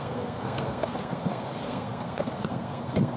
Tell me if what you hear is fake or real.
fake